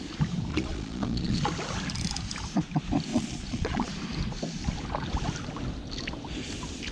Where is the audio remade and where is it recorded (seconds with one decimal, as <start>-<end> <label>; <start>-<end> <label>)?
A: 0.0-0.5 recorded; 0.5-1.4 remade; 1.4-3.1 recorded; 3.1-3.9 remade; 3.9-6.9 recorded